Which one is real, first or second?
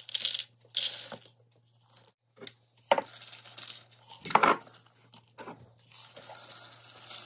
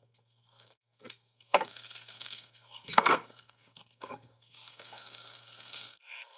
first